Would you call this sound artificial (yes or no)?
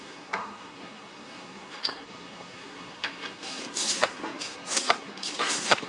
yes